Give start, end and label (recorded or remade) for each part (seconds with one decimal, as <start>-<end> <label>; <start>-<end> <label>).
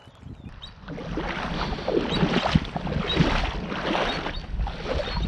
0.0-5.3 recorded